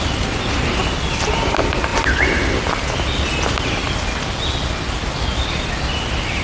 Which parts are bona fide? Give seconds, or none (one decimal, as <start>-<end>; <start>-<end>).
0.0-6.4